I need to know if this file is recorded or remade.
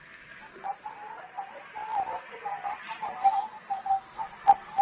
recorded